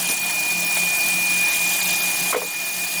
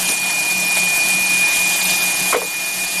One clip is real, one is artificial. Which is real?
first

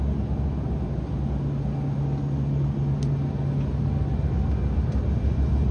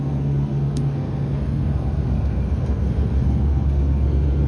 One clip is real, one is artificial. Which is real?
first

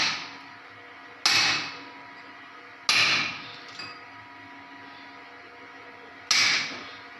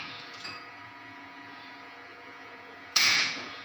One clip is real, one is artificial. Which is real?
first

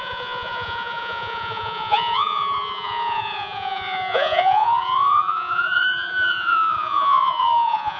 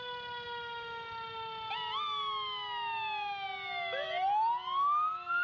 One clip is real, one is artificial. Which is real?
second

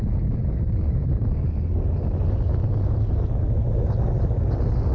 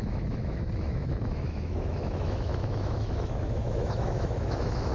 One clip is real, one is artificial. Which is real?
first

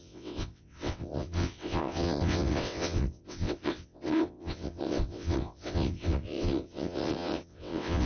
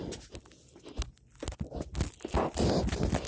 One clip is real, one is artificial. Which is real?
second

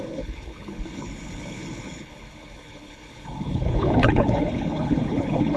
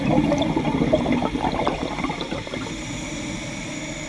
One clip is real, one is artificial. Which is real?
second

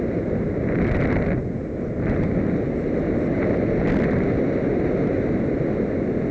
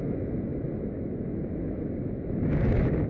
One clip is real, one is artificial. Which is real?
first